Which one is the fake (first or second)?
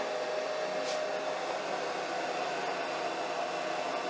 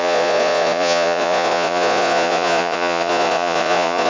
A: second